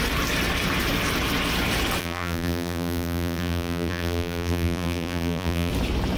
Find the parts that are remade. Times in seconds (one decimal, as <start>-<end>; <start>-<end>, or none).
2.0-5.7